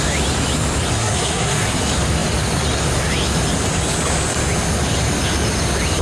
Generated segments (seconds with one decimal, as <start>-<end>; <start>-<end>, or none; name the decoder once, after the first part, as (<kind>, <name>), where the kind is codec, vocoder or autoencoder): 1.0-1.8 (codec, SNAC)